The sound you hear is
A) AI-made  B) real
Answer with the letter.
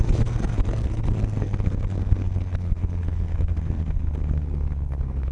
A